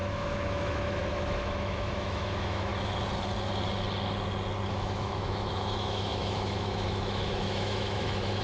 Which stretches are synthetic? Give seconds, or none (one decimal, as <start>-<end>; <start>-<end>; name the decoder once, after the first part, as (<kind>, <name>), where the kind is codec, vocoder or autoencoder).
0.0-2.7 (autoencoder, DAC-VAE); 4.7-8.4